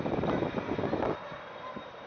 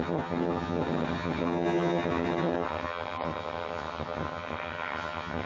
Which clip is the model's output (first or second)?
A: second